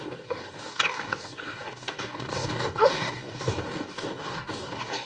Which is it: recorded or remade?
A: remade